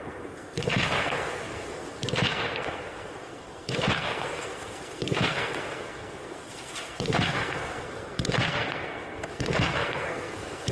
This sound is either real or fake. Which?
fake